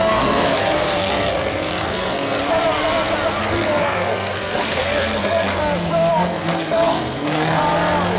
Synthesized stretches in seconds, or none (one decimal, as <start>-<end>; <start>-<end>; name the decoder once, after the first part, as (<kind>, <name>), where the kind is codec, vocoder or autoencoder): 0.0-2.4 (codec, SNAC); 3.4-5.6; 6.1-7.6